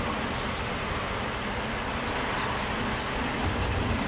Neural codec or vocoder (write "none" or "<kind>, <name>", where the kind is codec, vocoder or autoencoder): none